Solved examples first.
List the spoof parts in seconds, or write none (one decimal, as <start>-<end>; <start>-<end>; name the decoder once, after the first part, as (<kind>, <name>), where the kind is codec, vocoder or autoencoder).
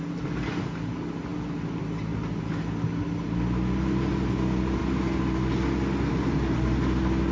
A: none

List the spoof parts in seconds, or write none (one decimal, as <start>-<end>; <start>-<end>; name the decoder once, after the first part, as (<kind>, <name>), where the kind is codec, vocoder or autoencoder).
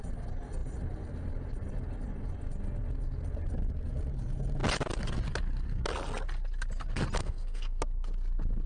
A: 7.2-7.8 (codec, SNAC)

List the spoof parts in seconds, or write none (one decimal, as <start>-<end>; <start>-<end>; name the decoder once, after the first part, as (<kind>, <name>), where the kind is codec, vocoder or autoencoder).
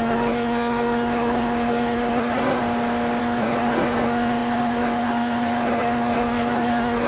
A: 0.0-2.6 (codec, SNAC); 3.2-7.1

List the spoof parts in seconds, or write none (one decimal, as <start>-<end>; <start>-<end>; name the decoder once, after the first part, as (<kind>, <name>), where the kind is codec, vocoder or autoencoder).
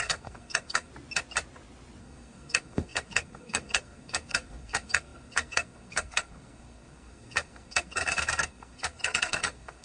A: 0.0-0.9 (codec, SNAC); 2.0-9.8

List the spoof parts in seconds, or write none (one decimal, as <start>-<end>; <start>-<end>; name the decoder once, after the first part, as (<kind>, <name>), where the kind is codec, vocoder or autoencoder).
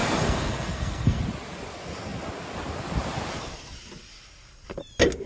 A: 0.0-1.2 (codec, SNAC)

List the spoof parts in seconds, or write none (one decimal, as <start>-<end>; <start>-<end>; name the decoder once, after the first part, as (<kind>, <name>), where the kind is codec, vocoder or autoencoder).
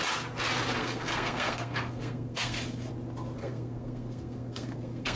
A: 0.8-2.9 (codec, SNAC); 3.4-5.2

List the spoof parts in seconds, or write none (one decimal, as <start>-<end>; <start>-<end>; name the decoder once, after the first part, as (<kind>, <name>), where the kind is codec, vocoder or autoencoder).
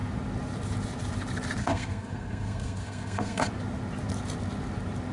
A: 1.6-3.5 (codec, SNAC)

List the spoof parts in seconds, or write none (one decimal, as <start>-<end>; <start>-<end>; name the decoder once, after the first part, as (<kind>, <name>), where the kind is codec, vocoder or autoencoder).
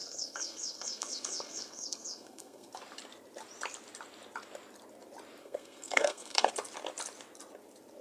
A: 0.0-2.7 (codec, SNAC); 5.4-6.5